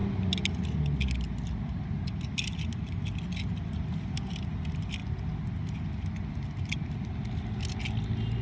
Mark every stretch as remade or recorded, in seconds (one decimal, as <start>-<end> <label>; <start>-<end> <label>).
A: 0.0-8.4 recorded